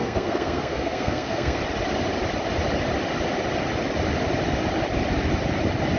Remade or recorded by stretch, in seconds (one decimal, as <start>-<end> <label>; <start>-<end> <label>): 0.0-1.6 remade; 1.6-6.0 recorded